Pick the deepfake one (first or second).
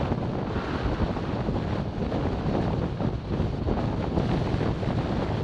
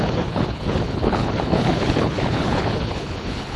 second